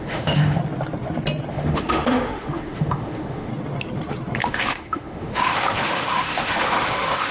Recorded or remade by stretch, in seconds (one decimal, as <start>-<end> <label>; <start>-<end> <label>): 0.0-0.6 remade; 0.6-1.5 recorded; 1.5-3.5 remade; 3.5-4.4 recorded; 4.4-7.3 remade